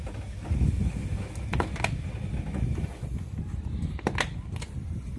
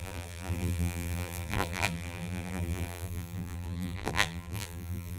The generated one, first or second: second